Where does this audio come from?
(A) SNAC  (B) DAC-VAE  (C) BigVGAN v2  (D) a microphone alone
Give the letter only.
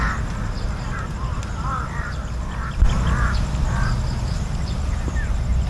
D